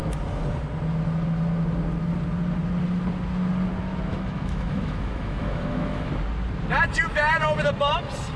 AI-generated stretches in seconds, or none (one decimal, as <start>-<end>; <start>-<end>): 4.1-6.1

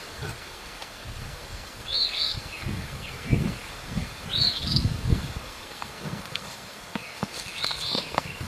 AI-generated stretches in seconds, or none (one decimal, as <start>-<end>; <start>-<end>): 0.0-8.5

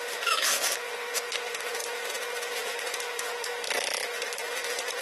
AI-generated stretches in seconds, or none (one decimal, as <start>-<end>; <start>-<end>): 0.0-5.0